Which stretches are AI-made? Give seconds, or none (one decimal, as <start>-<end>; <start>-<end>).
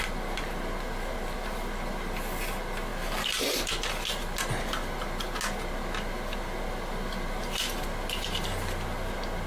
none